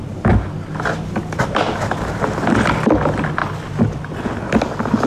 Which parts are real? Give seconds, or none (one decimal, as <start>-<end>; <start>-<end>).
0.0-5.1

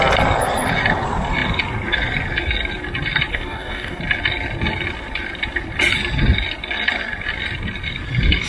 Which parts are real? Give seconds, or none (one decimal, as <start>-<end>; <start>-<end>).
0.0-3.3; 4.0-8.5

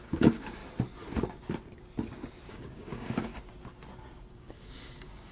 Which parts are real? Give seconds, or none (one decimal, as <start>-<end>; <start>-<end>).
0.6-2.5; 3.3-4.3

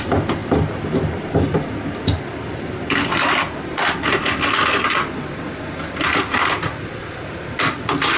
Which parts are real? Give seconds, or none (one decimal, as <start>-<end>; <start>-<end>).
0.0-8.2

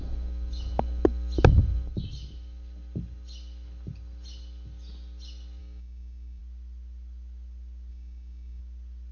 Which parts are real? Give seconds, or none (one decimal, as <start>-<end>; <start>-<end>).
0.0-5.6; 6.4-7.9; 8.6-9.1